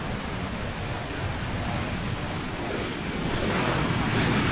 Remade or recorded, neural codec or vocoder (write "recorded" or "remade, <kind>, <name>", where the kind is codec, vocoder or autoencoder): recorded